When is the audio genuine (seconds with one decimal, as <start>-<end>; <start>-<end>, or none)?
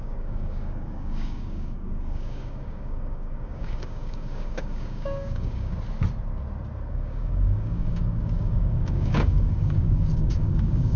5.7-6.9